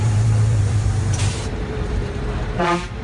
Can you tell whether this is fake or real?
fake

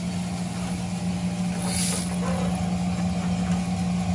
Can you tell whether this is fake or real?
real